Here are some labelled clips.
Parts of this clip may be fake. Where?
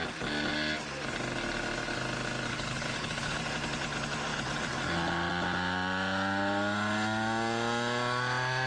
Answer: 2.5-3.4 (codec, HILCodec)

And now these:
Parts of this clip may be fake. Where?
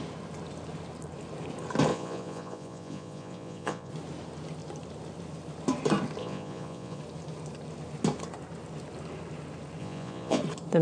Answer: 1.9-3.9 (vocoder, Vocos); 6.2-7.0; 9.8-10.4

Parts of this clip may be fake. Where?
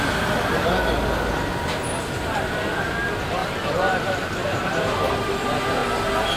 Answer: 3.4-5.1 (vocoder, BigVGAN v2)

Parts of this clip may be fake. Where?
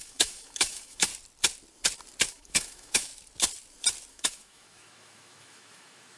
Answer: 0.0-1.1 (autoencoder, DAC-VAE); 2.3-3.1; 4.1-6.2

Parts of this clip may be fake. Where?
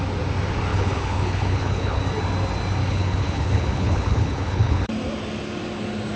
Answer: 0.7-2.0 (codec, HILCodec); 2.8-4.9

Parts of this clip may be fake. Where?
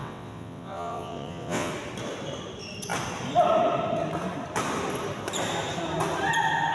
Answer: 0.0-1.7 (vocoder, WaveNeXt)